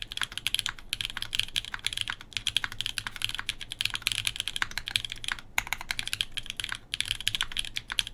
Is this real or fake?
real